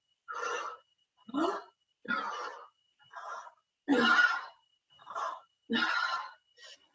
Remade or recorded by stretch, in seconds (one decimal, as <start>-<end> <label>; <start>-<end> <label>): 0.0-3.9 recorded; 3.9-5.7 remade; 5.7-6.9 recorded